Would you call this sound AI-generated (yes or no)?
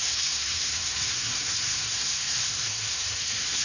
yes